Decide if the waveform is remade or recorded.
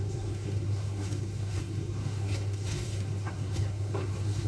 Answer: remade